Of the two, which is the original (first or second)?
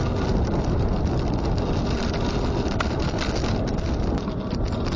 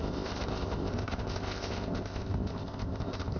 first